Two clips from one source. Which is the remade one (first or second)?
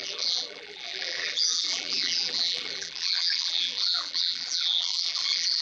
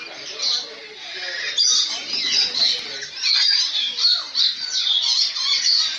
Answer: first